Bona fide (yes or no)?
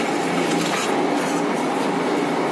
yes